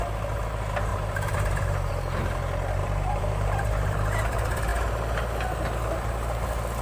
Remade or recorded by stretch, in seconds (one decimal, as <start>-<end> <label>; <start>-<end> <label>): 0.0-0.9 recorded; 0.9-1.9 remade; 1.9-2.8 recorded; 2.8-3.8 remade; 3.8-6.8 recorded